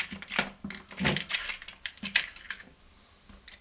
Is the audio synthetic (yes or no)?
no